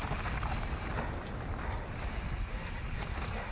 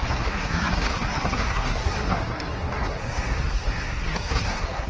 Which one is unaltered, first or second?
first